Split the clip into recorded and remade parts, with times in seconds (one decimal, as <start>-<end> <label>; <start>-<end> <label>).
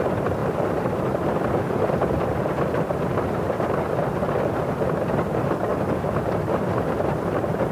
0.0-7.7 recorded